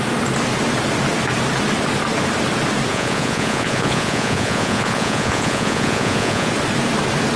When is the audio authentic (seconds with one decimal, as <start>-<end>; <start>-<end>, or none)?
0.0-2.9; 6.5-7.4

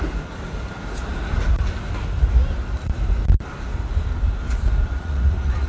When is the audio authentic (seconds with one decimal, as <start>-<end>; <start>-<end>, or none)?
0.0-4.9

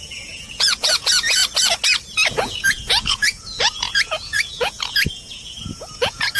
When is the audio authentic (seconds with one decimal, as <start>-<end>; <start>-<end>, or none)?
1.4-2.3

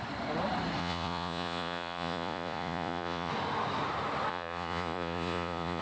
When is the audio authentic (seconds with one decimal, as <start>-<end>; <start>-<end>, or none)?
0.0-0.8; 3.3-4.3

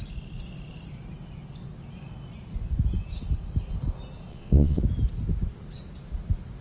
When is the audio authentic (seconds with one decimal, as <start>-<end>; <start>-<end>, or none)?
0.0-4.3; 4.8-6.6